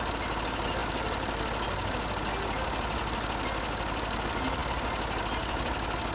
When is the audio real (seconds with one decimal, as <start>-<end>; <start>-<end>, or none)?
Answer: 0.0-6.1